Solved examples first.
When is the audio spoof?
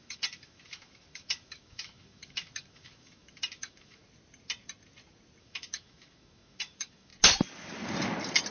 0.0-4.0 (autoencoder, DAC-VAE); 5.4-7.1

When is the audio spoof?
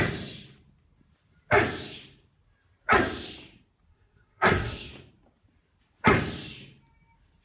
3.9-4.9 (codec, SNAC)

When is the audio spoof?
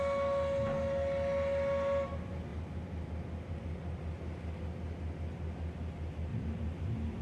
6.3-7.2 (vocoder, BigVGAN v2)